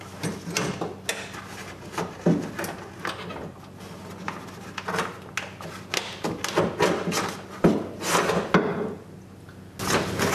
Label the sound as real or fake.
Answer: real